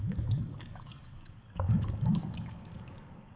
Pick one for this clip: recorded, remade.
remade